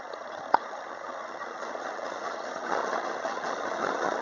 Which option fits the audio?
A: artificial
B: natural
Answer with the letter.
A